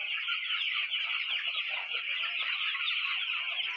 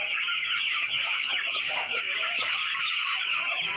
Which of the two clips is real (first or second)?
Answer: first